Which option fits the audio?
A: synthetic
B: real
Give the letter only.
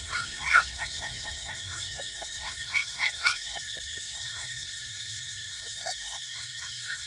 A